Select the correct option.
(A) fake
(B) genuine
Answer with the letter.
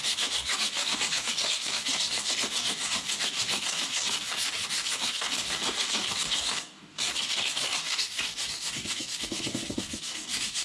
A